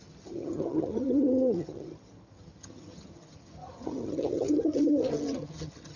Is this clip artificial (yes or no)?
yes